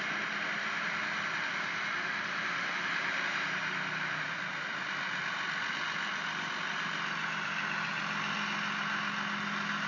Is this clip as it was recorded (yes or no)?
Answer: yes